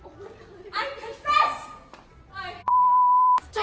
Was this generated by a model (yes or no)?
yes